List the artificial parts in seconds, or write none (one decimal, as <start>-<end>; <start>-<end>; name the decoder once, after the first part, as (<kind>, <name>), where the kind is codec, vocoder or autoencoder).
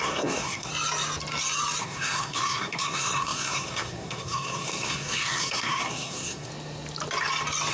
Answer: 0.0-0.7 (codec, SNAC); 1.8-6.5